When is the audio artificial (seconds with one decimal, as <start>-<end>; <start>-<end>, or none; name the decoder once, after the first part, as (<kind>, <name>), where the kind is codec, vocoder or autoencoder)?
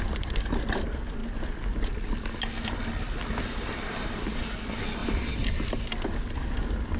3.5-4.4 (vocoder, BigVGAN v2); 5.0-6.6